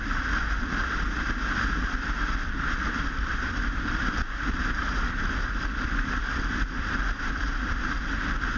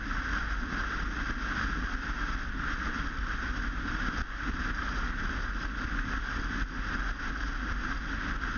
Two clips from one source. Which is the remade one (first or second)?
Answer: first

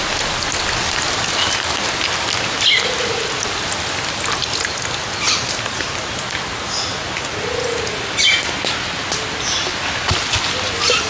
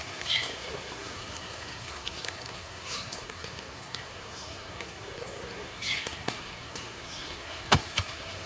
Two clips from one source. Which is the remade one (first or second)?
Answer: second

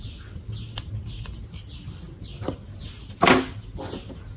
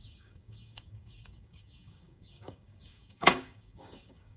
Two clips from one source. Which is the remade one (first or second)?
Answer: second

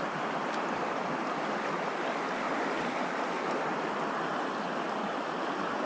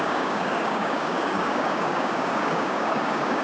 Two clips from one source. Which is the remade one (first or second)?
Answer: second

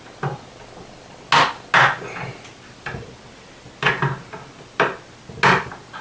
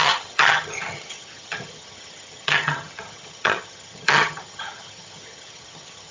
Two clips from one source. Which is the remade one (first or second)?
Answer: second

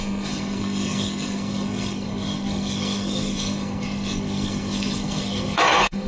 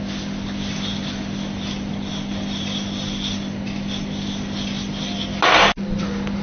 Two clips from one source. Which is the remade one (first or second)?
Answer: first